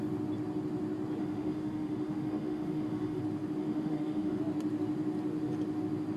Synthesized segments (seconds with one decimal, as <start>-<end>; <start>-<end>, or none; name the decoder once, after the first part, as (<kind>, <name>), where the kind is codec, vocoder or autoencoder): 1.2-3.2 (autoencoder, DAC-VAE); 3.6-4.4